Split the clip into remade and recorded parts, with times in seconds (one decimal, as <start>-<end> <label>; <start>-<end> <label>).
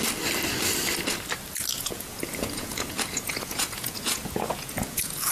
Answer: 0.0-1.7 recorded; 1.7-5.3 remade